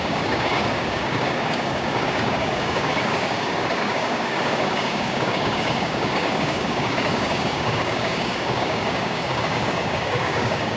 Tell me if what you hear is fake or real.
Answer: fake